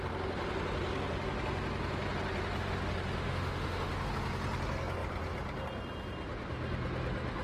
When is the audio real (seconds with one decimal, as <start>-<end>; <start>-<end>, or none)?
0.0-3.2; 4.1-7.4